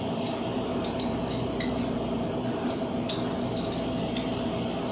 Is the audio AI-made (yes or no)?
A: no